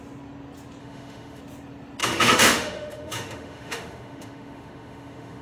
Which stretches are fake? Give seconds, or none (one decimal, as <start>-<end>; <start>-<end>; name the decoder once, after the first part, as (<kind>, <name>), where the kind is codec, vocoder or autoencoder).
0.8-1.4 (autoencoder, DAC-VAE); 2.0-5.4